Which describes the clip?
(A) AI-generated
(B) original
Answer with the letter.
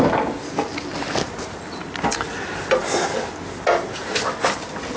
B